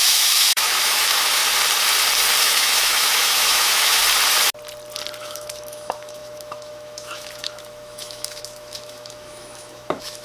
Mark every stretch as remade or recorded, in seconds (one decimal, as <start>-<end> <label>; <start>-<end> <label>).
0.0-1.4 remade; 1.4-2.4 recorded; 2.4-4.0 remade; 4.0-5.2 recorded; 5.2-10.2 remade